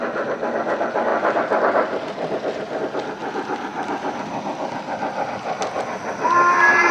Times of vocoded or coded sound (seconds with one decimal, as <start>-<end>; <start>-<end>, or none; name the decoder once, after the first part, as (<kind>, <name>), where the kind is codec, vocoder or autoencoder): 1.1-2.8 (vocoder, BigVGAN v2)